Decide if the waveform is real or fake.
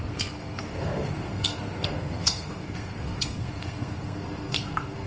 fake